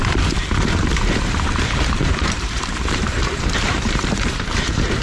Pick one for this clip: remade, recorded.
remade